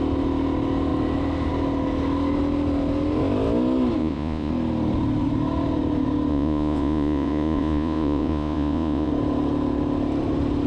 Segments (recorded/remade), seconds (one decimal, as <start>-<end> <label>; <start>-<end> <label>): 0.0-4.0 recorded; 4.0-4.5 remade; 4.5-6.3 recorded; 6.3-9.1 remade; 9.1-10.7 recorded